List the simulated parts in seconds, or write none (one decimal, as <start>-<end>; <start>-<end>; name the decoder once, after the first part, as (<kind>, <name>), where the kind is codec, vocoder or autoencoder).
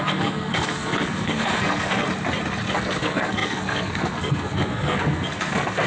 0.0-2.0 (codec, SNAC); 2.7-5.9